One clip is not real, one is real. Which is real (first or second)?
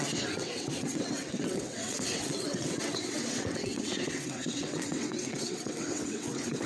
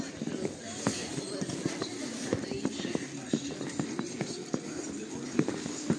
second